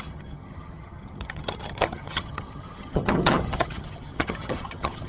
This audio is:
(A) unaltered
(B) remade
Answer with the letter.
B